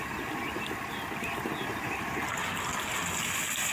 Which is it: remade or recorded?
recorded